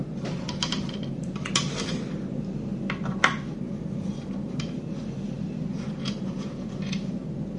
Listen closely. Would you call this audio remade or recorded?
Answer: remade